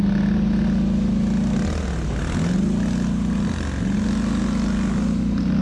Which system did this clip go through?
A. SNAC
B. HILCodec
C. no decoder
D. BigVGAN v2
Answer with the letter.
C